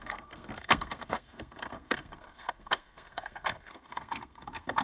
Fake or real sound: fake